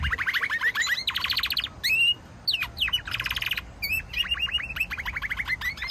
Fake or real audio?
real